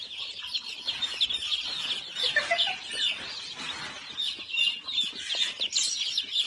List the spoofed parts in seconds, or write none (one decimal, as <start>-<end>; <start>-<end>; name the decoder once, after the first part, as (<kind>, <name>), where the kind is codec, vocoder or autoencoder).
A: none